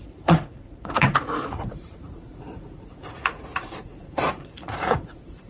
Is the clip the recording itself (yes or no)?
no